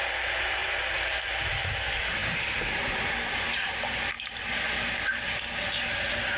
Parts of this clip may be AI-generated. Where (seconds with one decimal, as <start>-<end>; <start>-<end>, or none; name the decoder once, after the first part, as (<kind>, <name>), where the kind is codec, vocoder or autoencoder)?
0.6-1.2 (vocoder, BigVGAN v2); 2.2-4.1